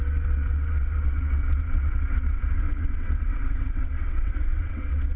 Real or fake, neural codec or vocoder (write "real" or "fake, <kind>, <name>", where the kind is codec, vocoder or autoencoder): fake, vocoder, WaveNeXt